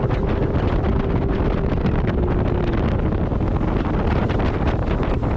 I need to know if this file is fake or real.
real